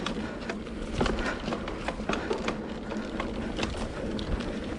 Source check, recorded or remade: recorded